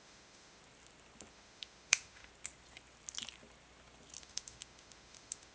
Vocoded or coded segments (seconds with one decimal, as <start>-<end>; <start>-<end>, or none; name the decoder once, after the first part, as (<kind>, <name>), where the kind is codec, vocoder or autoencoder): 0.0-0.6 (autoencoder, DAC-VAE); 1.3-2.3; 4.2-5.5